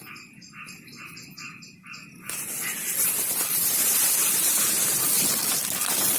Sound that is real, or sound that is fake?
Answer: real